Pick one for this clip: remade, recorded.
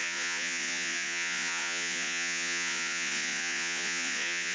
remade